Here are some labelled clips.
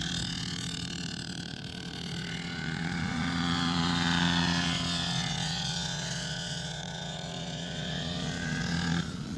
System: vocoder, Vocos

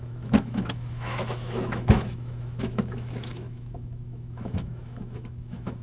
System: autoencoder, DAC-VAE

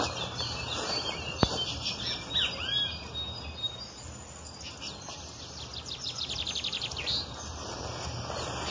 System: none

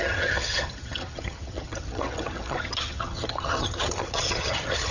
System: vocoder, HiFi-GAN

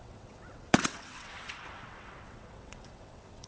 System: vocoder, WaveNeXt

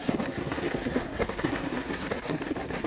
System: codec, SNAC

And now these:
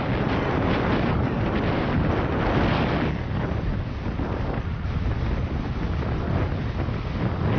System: none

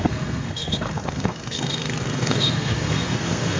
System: codec, SNAC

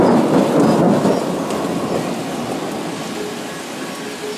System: none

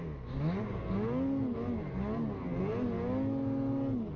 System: none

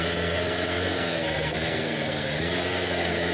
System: codec, SNAC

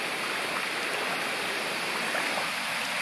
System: none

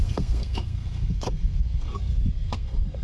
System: codec, SNAC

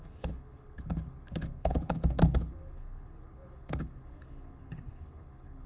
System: codec, HILCodec